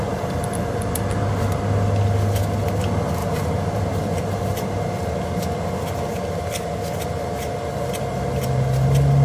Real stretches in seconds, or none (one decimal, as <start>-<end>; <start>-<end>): 0.0-3.2; 4.0-9.2